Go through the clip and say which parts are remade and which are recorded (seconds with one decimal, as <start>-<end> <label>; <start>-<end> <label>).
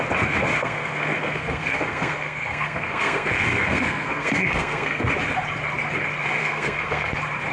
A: 0.0-0.6 recorded; 0.6-5.1 remade; 5.1-6.4 recorded; 6.4-7.1 remade; 7.1-7.5 recorded